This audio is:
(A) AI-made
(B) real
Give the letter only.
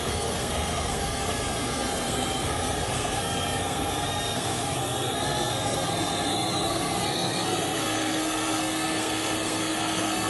A